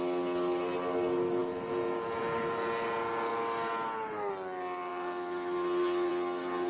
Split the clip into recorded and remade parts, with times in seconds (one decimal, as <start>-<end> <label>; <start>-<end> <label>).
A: 0.0-6.7 recorded